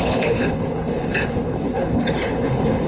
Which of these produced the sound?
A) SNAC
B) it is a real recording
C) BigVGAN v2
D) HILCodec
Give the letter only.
D